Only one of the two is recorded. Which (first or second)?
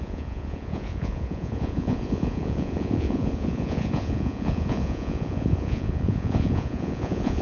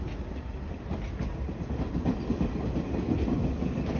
second